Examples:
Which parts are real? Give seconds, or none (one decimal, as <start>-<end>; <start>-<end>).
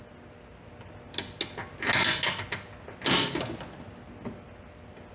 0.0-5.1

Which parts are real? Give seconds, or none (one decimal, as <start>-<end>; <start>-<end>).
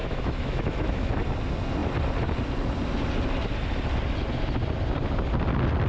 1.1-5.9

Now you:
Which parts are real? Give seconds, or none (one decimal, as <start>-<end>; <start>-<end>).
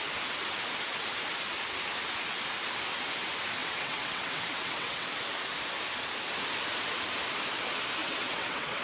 0.0-3.6; 5.1-8.0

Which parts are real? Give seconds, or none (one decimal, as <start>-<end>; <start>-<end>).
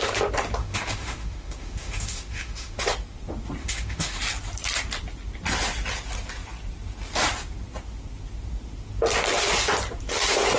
0.0-0.6; 2.8-3.6; 4.2-10.6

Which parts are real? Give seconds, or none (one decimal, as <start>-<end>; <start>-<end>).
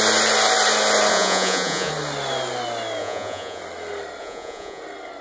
0.0-1.1; 1.9-3.0; 3.6-4.2; 4.8-5.2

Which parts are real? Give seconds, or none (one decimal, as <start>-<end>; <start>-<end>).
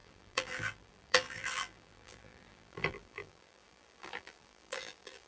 none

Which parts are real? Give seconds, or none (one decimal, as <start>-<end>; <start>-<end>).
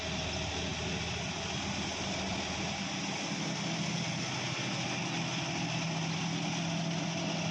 0.0-7.5